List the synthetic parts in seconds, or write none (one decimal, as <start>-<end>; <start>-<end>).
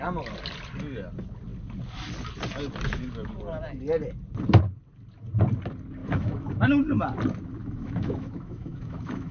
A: 6.0-6.6; 7.6-9.3